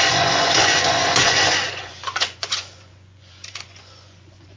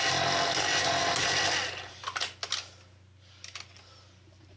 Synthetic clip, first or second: first